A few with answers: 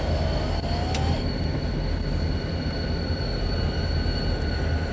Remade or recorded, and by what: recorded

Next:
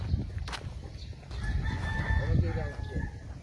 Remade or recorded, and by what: recorded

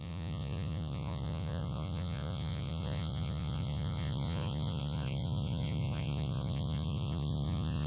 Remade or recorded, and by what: remade, vocoder, Vocos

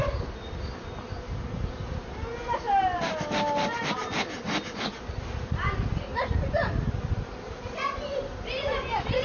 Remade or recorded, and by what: recorded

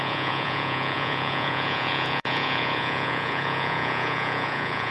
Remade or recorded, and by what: remade, vocoder, Vocos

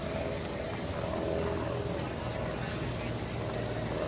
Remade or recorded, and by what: recorded